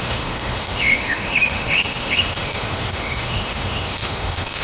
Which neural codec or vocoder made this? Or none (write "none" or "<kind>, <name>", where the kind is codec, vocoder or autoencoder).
autoencoder, DAC-VAE